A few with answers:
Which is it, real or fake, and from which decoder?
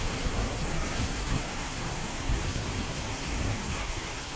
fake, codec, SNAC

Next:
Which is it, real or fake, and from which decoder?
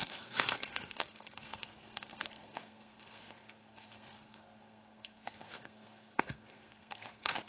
fake, codec, SNAC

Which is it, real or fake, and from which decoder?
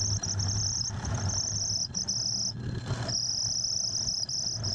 real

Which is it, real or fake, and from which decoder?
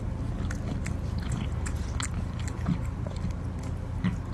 real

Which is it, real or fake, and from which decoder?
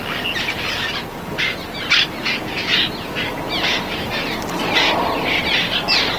real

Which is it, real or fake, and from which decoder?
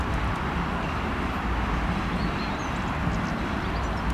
real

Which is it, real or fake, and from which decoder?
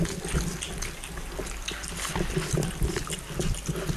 real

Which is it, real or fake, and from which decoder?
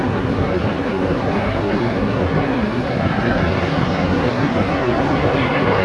fake, codec, SNAC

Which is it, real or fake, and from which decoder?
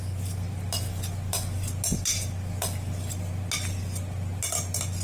real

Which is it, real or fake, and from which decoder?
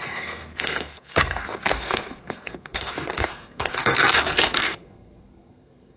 fake, codec, SNAC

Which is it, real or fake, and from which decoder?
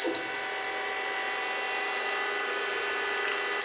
real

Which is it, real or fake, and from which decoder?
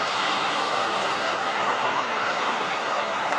fake, codec, SNAC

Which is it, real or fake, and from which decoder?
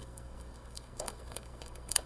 fake, codec, SNAC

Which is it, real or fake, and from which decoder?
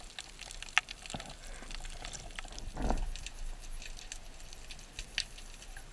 real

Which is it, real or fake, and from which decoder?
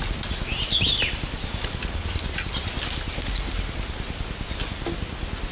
real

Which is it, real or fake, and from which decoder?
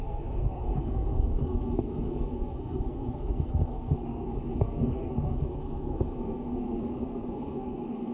fake, codec, SNAC